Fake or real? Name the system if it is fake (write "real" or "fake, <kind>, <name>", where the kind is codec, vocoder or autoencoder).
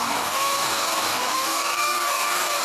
fake, codec, DAC